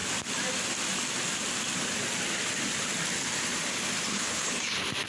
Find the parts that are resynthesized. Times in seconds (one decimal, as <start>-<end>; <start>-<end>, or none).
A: 4.1-4.6